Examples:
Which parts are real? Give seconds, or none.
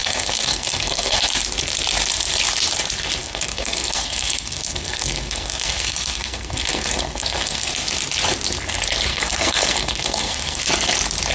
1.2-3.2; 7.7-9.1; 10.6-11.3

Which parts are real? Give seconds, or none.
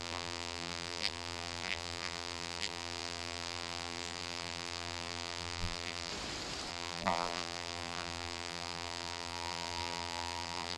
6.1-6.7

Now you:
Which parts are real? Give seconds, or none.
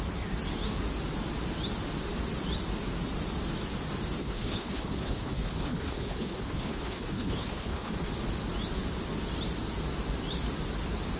0.0-4.2; 8.1-11.2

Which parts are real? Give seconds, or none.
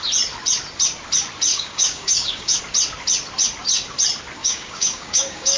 0.0-1.5; 2.6-4.4